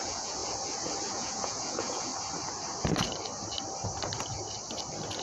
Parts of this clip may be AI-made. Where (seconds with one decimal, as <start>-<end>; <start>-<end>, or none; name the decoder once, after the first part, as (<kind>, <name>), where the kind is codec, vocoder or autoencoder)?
0.0-0.4 (vocoder, Vocos); 1.1-2.1